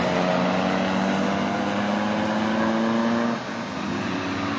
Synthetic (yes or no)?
no